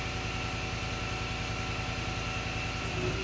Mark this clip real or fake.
real